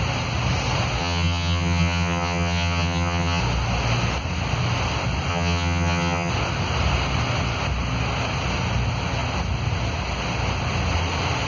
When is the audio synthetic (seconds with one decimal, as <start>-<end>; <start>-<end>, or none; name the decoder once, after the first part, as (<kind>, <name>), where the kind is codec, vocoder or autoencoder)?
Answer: 1.0-3.4 (vocoder, HiFi-GAN); 5.3-6.3